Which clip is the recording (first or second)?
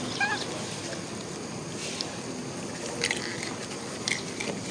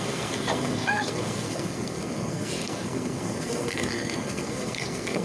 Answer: first